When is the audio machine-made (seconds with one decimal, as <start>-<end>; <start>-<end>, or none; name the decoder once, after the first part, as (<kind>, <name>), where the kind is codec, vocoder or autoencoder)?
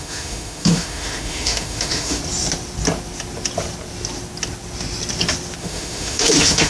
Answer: 0.0-2.2 (autoencoder, DAC-VAE); 5.6-6.7